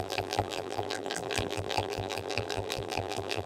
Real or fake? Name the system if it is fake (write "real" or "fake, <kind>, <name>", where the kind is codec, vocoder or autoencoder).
fake, vocoder, BigVGAN v2